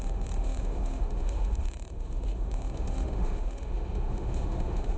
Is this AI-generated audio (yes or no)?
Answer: yes